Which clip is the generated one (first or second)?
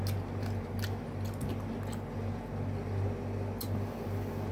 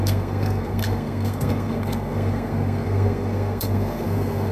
second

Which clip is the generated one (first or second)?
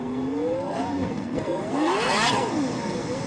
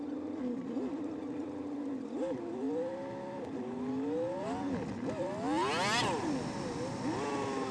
first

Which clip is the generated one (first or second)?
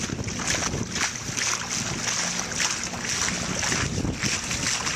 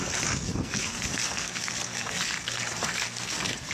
second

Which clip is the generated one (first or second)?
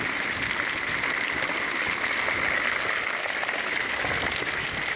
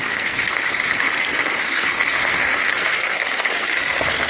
second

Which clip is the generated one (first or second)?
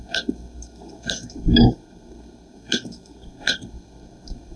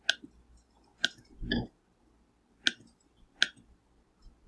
first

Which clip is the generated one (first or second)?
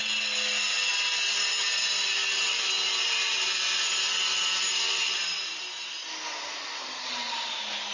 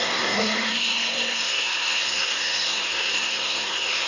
second